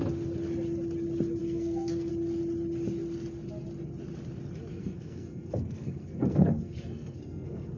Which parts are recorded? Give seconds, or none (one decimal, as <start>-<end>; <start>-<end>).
0.0-1.4; 2.1-4.7